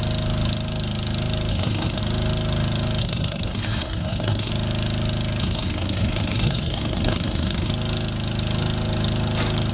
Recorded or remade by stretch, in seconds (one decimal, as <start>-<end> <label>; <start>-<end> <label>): 0.0-1.5 recorded; 1.5-2.0 remade; 2.0-3.0 recorded; 3.0-4.5 remade; 4.5-5.4 recorded; 5.4-7.7 remade; 7.7-9.7 recorded